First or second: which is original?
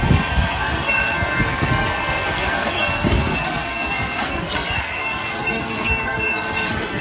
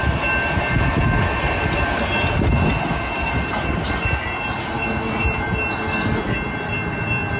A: second